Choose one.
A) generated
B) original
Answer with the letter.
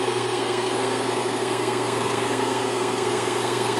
A